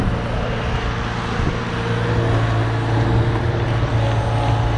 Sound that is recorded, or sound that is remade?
recorded